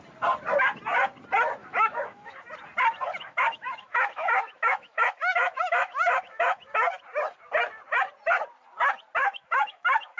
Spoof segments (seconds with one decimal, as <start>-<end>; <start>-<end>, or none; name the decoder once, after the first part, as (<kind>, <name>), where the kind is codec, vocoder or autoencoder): 1.6-2.4 (autoencoder, DAC-VAE); 3.1-6.7; 9.2-10.2